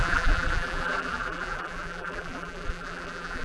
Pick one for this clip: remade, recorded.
remade